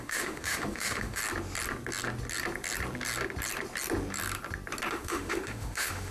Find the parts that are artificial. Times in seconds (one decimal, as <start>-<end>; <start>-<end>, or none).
0.0-1.2; 4.9-6.1